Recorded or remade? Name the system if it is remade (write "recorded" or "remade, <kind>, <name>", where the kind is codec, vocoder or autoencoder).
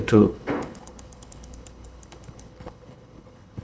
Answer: remade, codec, HILCodec